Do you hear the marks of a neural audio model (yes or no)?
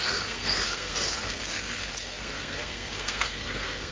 yes